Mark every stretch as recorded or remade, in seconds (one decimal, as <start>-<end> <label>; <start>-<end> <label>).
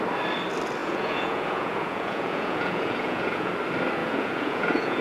0.0-0.8 recorded; 0.8-3.5 remade; 3.5-4.0 recorded; 4.0-5.0 remade